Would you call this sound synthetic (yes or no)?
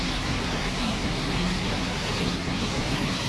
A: yes